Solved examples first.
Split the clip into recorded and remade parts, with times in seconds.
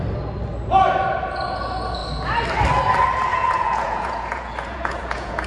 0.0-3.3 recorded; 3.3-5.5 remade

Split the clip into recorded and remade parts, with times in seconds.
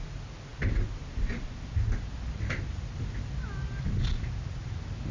0.0-5.1 recorded